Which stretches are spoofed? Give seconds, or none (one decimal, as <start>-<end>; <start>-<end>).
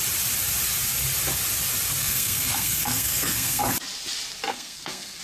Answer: 2.0-3.6; 4.5-5.2